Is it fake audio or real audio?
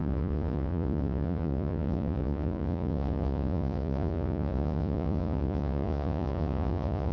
fake